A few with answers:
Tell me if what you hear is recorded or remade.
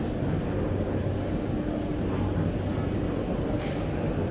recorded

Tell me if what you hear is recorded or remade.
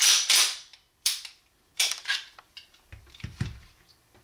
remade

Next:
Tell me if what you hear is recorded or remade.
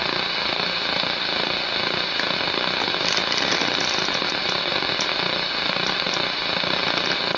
recorded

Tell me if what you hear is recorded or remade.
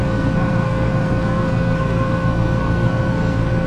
remade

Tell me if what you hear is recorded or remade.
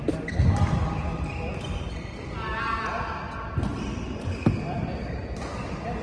recorded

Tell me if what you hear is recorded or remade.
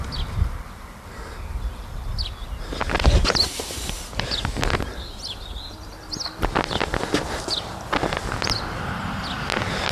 recorded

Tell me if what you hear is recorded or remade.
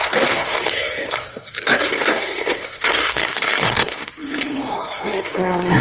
remade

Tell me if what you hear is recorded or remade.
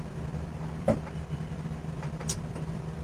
remade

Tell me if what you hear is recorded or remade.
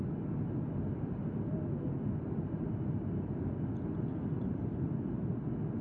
recorded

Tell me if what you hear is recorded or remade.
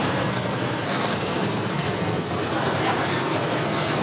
remade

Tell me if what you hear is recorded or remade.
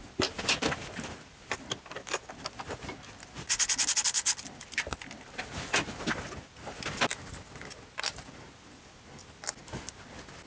recorded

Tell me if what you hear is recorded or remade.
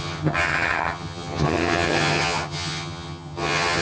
remade